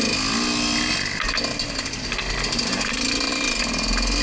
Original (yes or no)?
yes